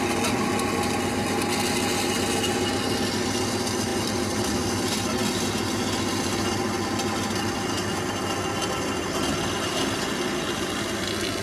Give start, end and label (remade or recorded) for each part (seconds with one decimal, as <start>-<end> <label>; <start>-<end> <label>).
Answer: 0.0-11.4 recorded